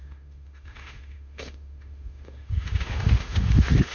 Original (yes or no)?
no